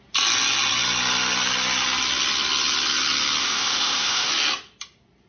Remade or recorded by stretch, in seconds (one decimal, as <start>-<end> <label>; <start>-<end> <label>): 0.0-3.4 recorded; 3.4-4.3 remade; 4.3-5.3 recorded

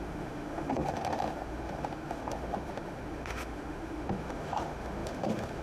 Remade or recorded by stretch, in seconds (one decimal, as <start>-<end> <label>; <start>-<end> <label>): 0.0-5.6 remade

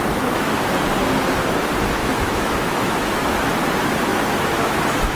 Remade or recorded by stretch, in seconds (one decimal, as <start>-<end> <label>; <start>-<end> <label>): 0.0-0.5 remade; 0.5-2.0 recorded; 2.0-3.5 remade; 3.5-4.1 recorded; 4.1-5.2 remade

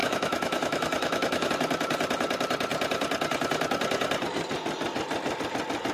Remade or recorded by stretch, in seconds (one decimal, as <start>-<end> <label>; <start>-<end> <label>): 0.0-1.5 remade; 1.5-5.9 recorded

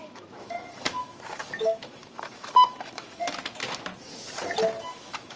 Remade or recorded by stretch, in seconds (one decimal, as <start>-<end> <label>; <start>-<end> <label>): 0.0-3.2 remade; 3.2-4.8 recorded; 4.8-5.4 remade

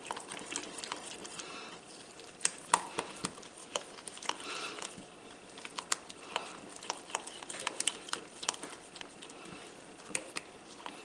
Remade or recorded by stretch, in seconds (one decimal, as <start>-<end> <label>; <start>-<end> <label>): 0.0-3.6 recorded; 3.6-4.3 remade; 4.3-11.0 recorded

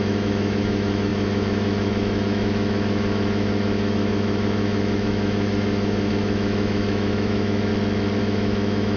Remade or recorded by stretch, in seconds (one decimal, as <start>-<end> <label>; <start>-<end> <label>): 0.0-7.7 remade; 7.7-8.2 recorded; 8.2-9.0 remade

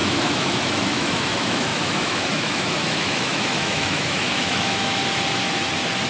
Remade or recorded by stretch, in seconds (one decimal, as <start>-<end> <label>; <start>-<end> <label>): 0.0-5.0 remade; 5.0-6.1 recorded